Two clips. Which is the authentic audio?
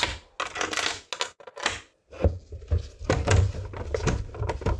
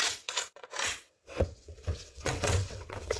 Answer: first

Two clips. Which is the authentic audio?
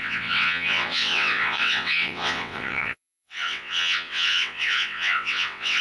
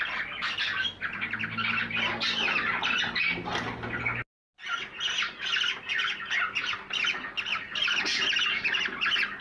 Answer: second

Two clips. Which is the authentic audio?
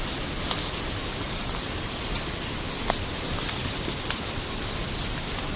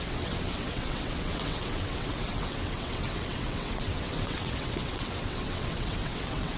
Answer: first